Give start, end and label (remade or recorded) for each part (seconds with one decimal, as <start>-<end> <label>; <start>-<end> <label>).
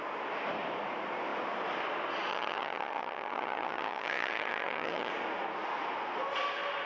0.0-2.3 recorded; 2.3-5.1 remade; 5.1-6.9 recorded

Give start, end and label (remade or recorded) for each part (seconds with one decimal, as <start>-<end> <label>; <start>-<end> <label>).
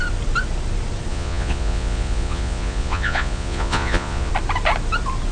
0.0-1.1 recorded; 1.1-4.3 remade; 4.3-5.3 recorded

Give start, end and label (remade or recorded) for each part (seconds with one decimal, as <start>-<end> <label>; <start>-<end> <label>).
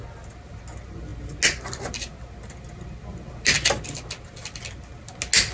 0.0-5.5 recorded